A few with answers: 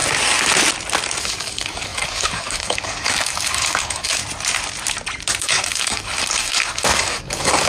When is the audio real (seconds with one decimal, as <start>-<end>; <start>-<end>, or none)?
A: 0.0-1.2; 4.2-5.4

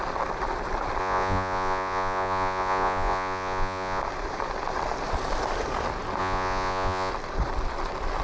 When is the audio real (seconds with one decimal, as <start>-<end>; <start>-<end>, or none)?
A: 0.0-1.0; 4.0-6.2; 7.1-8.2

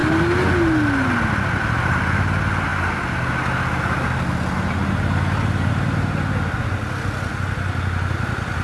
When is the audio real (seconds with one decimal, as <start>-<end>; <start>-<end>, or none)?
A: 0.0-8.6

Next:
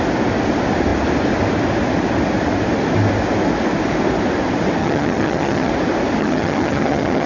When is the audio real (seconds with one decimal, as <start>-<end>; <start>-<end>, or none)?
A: 0.0-4.8; 5.7-6.2

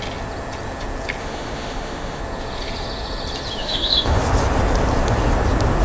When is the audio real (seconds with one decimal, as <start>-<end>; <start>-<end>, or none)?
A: 0.0-1.2; 2.2-3.6; 4.2-5.8

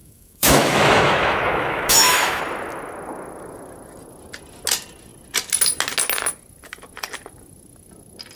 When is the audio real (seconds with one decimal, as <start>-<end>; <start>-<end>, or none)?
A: 2.4-8.4

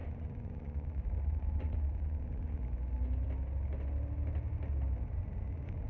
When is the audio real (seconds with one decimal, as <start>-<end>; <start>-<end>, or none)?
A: 2.6-5.4